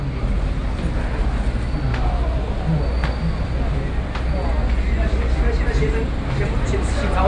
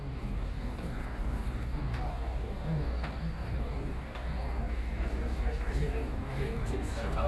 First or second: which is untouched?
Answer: first